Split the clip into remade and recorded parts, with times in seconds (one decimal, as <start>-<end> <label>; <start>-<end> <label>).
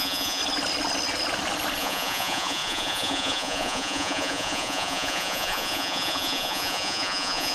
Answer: 0.0-0.4 remade; 0.4-1.8 recorded; 1.8-7.5 remade